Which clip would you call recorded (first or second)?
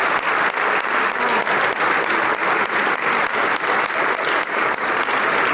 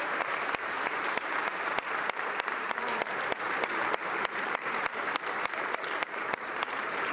first